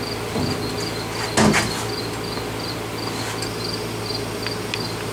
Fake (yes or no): no